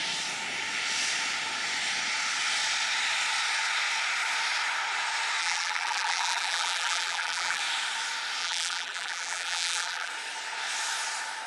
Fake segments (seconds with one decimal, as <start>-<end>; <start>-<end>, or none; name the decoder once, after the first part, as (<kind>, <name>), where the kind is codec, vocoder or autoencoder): 5.4-7.6 (vocoder, BigVGAN v2); 8.4-10.1